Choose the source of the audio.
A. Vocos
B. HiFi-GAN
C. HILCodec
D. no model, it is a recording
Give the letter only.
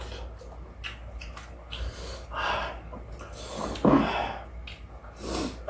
D